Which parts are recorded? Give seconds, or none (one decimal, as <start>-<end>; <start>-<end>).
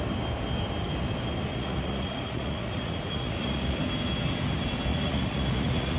0.0-1.5; 3.8-4.9